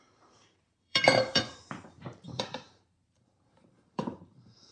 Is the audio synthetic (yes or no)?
yes